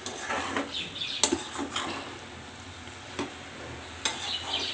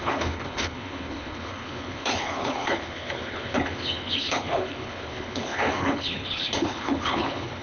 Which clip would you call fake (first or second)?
second